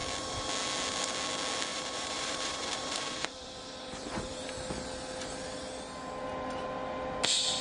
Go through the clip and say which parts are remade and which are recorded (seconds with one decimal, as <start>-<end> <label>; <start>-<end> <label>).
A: 0.0-1.7 recorded; 1.7-4.5 remade; 4.5-7.6 recorded